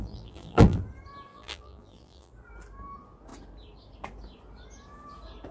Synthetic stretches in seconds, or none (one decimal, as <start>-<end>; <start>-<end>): 0.0-0.8; 1.3-2.3